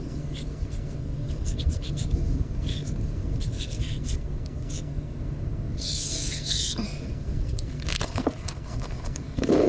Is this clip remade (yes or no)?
yes